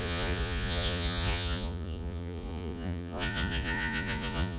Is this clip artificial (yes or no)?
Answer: yes